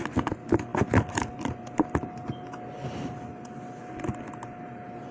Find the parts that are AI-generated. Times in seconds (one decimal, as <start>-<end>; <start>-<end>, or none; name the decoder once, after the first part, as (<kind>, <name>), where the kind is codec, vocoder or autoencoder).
none